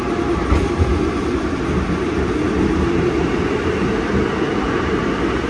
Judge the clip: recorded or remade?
recorded